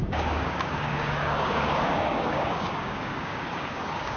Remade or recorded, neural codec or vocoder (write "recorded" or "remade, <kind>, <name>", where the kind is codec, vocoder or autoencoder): remade, codec, DAC